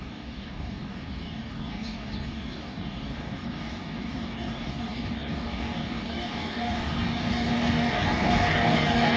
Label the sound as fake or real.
fake